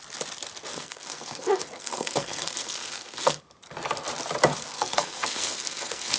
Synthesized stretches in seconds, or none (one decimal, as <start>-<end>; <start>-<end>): 0.7-3.4; 4.6-6.2